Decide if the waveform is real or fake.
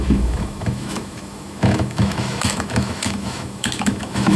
fake